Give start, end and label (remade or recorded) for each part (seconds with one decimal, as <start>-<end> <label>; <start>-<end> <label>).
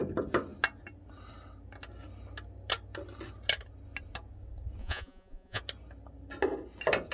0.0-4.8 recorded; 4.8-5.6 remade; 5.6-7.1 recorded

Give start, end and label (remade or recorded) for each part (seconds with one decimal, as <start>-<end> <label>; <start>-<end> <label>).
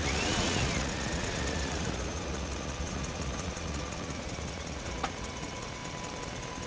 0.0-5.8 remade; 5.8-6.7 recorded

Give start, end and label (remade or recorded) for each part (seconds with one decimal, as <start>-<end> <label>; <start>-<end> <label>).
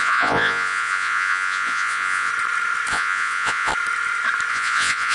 0.0-2.3 remade; 2.3-2.9 recorded; 2.9-3.7 remade; 3.7-4.5 recorded; 4.5-5.1 remade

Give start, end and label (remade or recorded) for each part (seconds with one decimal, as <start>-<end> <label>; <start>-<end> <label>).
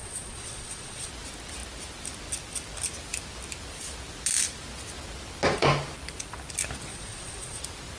0.0-1.1 remade; 1.1-6.9 recorded; 6.9-7.6 remade; 7.6-8.0 recorded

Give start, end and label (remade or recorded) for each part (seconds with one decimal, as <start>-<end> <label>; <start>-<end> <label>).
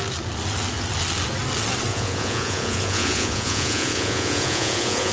0.0-1.9 recorded; 1.9-5.1 remade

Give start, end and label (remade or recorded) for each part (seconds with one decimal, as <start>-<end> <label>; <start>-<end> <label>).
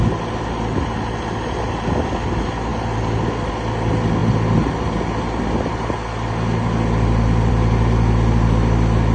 0.0-9.1 recorded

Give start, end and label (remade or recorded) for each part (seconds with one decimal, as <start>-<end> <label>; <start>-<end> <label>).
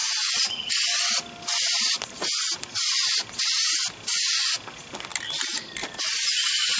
0.0-6.8 recorded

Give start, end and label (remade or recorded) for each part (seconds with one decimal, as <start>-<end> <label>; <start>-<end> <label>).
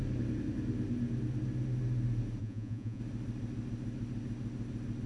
0.0-2.4 recorded; 2.4-3.0 remade; 3.0-5.1 recorded